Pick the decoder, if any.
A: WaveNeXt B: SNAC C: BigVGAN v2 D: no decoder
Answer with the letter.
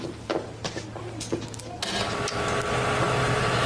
D